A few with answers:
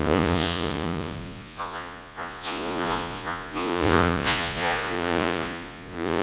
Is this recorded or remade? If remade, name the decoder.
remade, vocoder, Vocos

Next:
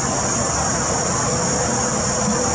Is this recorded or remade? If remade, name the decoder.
recorded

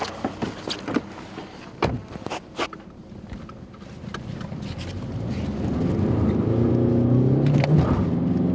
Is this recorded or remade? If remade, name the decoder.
recorded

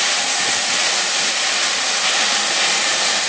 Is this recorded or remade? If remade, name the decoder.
remade, vocoder, BigVGAN v2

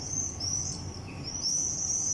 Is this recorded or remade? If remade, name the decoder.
remade, vocoder, BigVGAN v2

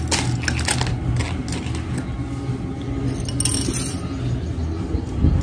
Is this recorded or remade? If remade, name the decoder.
recorded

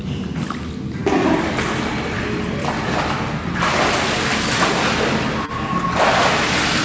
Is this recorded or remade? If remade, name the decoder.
recorded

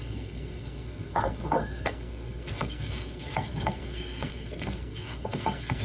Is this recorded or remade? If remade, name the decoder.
remade, codec, SNAC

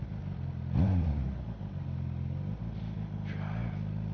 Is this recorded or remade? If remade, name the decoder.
recorded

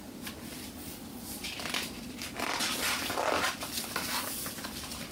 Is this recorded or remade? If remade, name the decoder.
remade, vocoder, BigVGAN v2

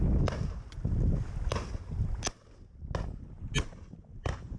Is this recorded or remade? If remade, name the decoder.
recorded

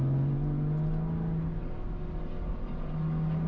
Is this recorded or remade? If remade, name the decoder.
recorded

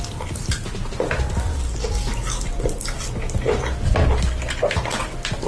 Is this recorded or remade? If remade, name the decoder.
recorded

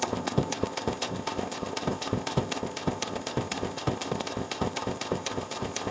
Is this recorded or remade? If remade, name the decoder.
remade, codec, ZipCodec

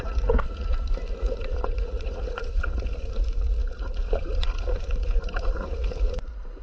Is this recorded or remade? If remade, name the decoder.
remade, vocoder, Vocos